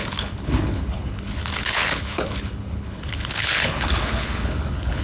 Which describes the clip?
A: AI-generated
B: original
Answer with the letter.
A